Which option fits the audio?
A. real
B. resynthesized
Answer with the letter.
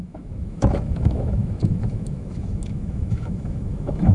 B